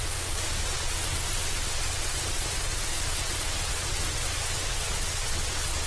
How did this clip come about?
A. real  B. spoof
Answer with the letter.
B